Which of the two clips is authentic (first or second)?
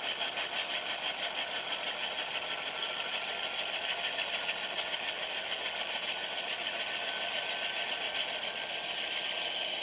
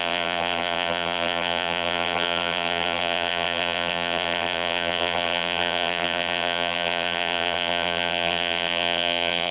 first